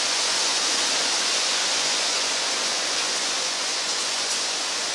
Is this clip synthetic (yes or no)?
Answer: yes